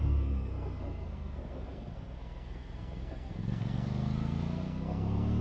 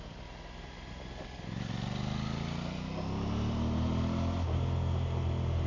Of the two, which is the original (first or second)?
second